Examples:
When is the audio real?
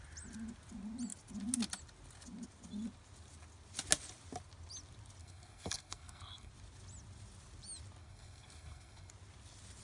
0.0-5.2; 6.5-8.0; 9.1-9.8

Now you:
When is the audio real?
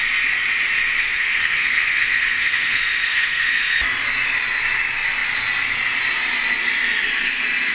0.0-1.0; 3.6-7.7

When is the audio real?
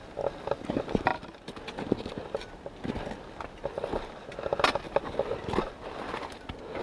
0.0-6.8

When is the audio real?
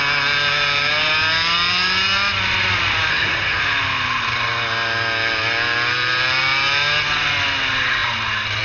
0.0-3.1; 3.6-8.6